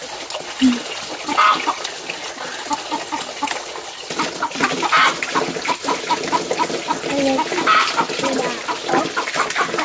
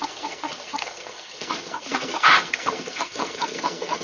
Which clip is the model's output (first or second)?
second